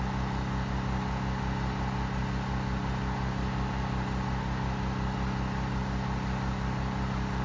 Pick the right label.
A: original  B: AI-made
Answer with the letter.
A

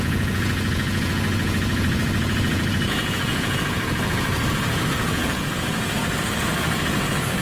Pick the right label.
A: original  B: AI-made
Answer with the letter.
B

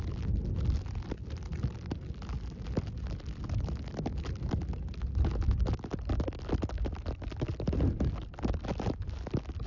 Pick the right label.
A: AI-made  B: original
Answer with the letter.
B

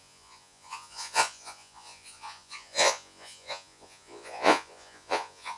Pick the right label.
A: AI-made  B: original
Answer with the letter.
A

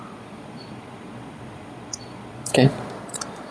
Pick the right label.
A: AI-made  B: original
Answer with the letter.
A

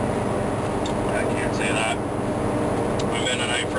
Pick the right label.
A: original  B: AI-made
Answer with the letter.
A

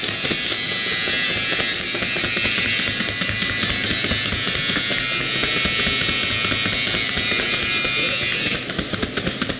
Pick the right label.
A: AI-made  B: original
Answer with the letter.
B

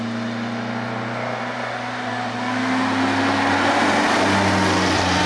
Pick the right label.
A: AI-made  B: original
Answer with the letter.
B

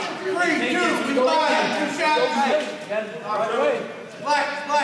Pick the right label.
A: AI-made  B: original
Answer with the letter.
B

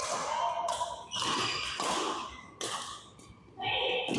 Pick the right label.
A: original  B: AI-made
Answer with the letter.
A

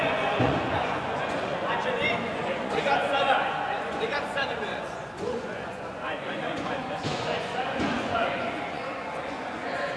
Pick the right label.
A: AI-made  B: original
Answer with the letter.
A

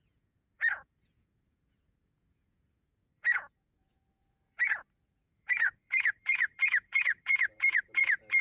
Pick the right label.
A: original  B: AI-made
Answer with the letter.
B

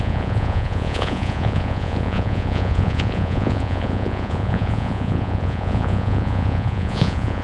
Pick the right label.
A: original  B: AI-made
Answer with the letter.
B